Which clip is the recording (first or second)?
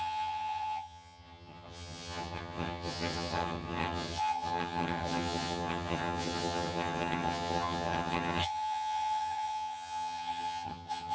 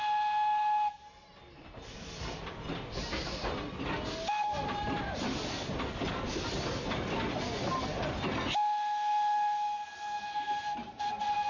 second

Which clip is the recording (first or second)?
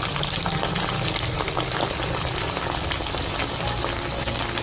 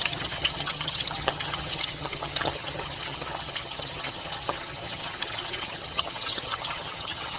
first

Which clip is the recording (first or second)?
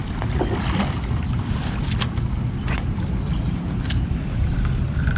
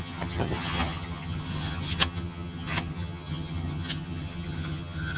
first